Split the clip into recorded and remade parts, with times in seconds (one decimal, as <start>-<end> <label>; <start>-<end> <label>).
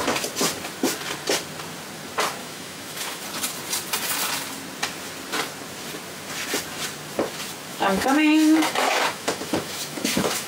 0.0-2.4 recorded; 2.4-3.2 remade; 3.2-7.7 recorded; 7.7-10.5 remade